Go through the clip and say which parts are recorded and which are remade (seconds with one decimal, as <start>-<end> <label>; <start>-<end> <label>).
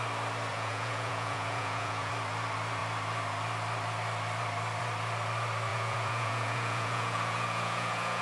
0.0-0.5 recorded; 0.5-2.1 remade; 2.1-5.7 recorded; 5.7-8.2 remade